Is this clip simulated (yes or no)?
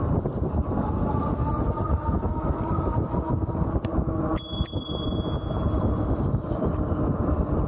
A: no